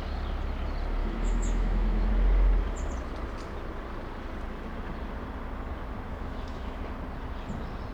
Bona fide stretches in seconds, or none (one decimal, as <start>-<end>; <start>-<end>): 0.0-1.0; 2.1-6.1; 6.8-7.9